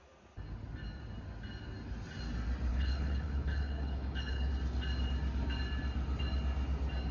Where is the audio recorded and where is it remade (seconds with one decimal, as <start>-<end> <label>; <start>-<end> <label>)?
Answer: 0.0-2.7 recorded; 2.7-4.5 remade; 4.5-7.1 recorded